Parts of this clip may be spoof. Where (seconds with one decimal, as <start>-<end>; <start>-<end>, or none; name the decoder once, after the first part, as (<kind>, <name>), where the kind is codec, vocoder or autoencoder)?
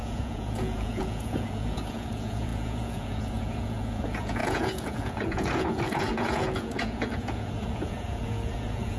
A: 0.0-9.0 (vocoder, Vocos)